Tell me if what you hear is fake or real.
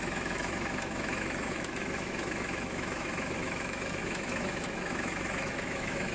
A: fake